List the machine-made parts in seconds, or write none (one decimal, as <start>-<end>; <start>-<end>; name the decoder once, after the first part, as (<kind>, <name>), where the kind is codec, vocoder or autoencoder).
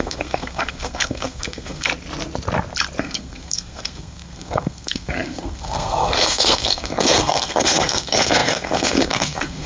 0.0-1.9 (codec, SNAC); 3.0-9.7